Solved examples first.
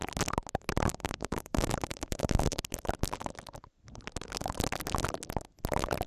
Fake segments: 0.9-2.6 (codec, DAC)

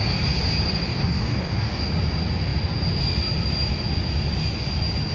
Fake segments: 0.9-1.8 (codec, DAC)